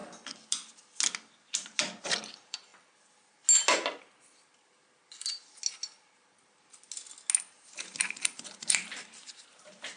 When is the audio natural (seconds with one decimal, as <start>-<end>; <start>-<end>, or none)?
0.0-2.3; 2.7-7.6